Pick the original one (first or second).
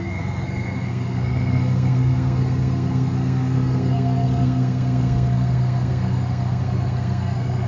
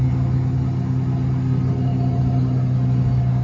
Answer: second